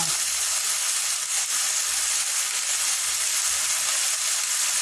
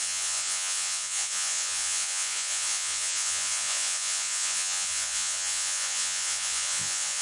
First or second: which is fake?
second